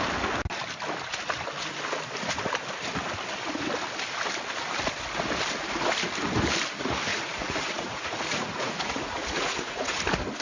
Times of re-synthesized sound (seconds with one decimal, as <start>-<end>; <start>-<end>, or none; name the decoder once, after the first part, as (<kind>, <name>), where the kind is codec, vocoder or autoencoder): 7.1-10.0 (vocoder, Vocos)